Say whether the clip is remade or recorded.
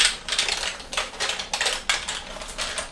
recorded